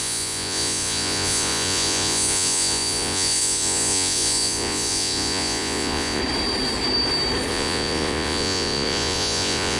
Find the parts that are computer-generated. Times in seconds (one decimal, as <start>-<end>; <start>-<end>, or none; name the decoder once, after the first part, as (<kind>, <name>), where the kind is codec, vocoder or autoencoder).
0.0-6.2 (vocoder, Vocos); 7.5-9.8